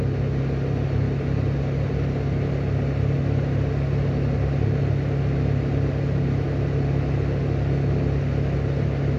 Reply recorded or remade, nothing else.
recorded